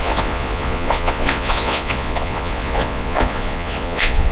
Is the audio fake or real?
fake